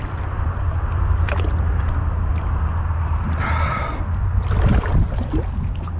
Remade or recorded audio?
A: recorded